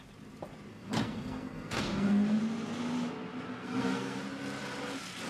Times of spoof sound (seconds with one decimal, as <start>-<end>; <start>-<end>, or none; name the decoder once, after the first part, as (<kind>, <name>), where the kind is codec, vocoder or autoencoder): 0.7-2.4 (codec, SNAC); 3.5-4.2